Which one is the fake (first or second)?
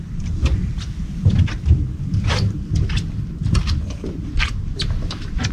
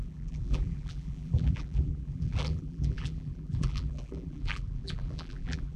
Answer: second